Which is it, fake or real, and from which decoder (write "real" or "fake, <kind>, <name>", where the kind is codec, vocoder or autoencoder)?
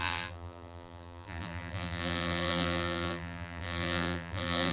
fake, vocoder, BigVGAN v2